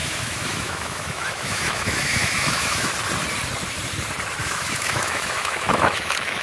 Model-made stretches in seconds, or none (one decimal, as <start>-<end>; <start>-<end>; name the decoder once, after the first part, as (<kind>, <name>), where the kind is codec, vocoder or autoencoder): 0.0-2.9 (autoencoder, DAC-VAE); 4.4-6.4